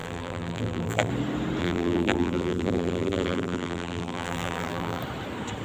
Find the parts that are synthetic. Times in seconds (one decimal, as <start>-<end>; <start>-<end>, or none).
0.0-1.1; 1.6-5.0